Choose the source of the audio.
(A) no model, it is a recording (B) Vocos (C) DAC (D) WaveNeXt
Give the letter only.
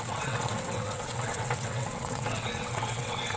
D